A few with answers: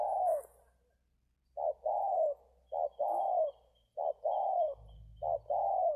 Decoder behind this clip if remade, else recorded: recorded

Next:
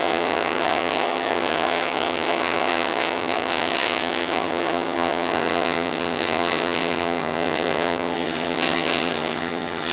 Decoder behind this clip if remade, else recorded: remade, vocoder, HiFi-GAN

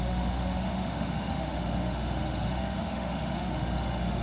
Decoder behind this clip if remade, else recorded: remade, autoencoder, DAC-VAE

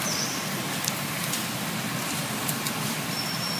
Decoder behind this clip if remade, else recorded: recorded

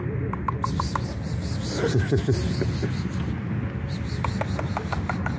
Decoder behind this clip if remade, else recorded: recorded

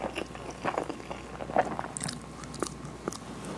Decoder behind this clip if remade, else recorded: recorded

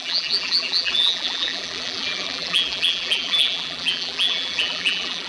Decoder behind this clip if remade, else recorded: remade, vocoder, BigVGAN v2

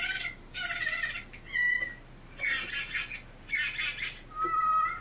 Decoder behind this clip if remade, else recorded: recorded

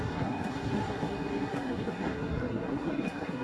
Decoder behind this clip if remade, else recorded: remade, codec, SNAC